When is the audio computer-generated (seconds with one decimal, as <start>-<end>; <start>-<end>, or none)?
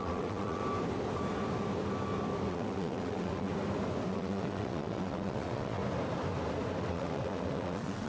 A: 0.0-0.6; 2.5-3.5; 4.1-5.8; 6.8-8.1